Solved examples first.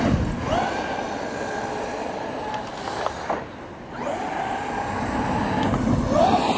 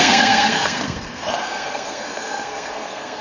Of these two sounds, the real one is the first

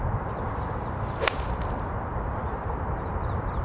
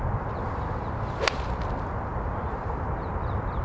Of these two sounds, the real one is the second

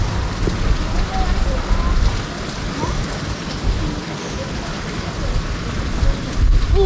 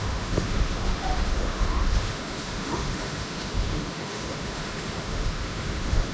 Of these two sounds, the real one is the first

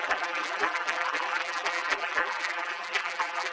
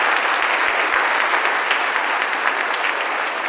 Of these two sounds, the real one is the second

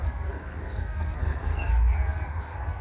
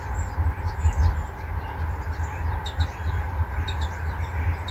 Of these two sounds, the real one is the second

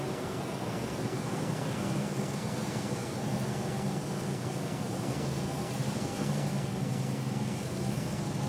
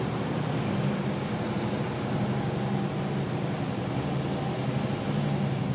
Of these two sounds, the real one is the second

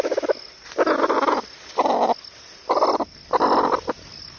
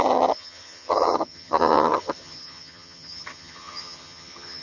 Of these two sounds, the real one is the first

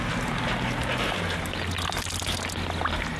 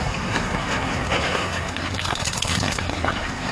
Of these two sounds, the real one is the first